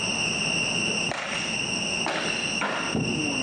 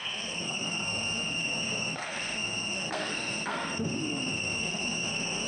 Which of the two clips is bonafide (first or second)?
first